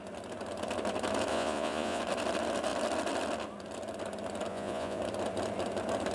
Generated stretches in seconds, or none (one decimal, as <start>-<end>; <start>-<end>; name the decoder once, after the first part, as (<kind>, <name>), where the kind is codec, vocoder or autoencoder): 1.3-2.0 (vocoder, Vocos); 4.5-5.0